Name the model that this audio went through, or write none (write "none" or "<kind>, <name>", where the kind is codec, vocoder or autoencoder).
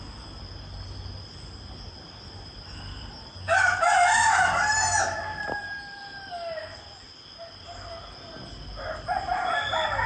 none